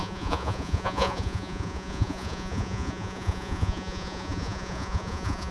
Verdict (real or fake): fake